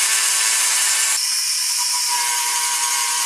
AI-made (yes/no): yes